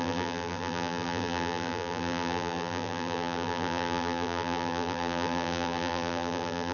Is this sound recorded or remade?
remade